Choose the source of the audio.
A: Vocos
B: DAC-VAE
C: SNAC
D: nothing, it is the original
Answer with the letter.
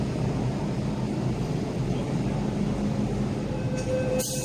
D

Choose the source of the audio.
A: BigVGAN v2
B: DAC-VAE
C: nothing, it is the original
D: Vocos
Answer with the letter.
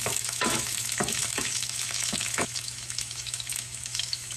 B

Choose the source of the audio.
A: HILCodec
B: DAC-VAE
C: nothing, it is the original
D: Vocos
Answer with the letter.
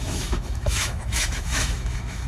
B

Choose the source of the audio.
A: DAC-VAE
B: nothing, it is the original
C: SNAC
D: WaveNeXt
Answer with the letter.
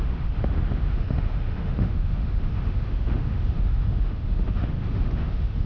A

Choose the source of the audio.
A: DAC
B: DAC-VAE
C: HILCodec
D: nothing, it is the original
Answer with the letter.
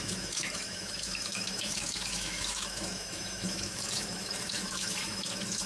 B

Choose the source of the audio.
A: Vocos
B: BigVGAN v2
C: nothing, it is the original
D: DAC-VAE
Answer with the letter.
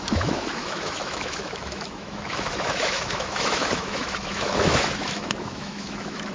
D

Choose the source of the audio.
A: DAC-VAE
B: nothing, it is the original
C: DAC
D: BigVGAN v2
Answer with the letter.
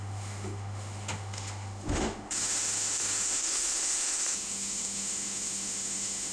A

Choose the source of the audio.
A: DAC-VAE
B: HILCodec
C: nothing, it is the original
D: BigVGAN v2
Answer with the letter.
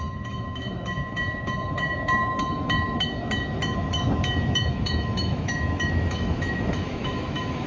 A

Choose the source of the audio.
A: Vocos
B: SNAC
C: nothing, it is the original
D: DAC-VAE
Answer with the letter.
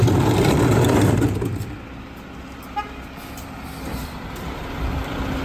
C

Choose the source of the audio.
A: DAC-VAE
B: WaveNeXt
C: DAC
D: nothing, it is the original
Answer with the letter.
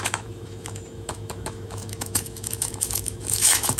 A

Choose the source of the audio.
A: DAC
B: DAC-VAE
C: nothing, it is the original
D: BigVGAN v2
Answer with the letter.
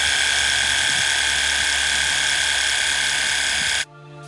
C